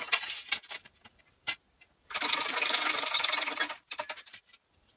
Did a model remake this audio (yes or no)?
yes